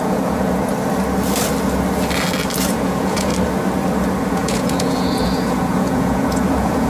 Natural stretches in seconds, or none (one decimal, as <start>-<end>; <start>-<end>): 0.7-2.7; 3.3-4.3

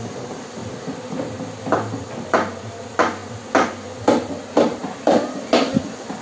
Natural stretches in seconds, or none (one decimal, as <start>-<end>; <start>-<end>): 0.0-6.2